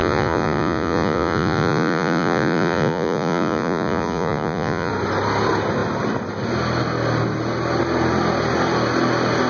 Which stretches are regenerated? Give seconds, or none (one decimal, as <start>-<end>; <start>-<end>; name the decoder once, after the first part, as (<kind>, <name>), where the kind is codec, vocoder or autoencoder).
0.0-4.9 (vocoder, Vocos)